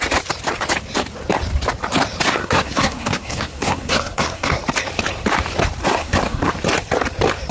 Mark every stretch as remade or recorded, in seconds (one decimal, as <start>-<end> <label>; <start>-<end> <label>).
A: 0.0-2.4 recorded; 2.4-4.6 remade; 4.6-5.8 recorded; 5.8-6.5 remade; 6.5-7.5 recorded